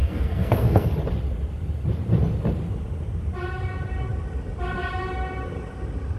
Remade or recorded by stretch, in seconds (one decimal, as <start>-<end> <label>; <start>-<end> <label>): 0.0-0.9 remade; 0.9-6.2 recorded